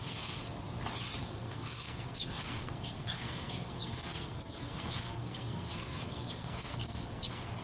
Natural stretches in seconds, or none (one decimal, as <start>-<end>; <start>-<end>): 0.4-1.2